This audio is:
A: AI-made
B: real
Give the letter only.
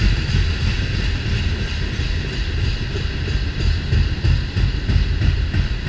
B